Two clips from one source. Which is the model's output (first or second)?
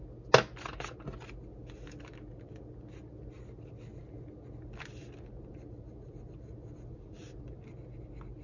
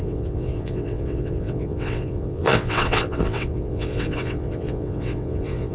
second